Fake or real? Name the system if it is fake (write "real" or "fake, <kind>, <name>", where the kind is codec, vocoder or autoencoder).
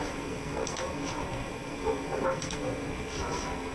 fake, codec, SNAC